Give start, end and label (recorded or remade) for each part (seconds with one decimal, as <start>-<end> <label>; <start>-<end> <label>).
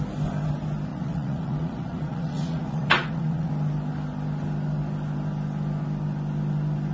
0.0-0.9 recorded; 0.9-3.5 remade; 3.5-6.9 recorded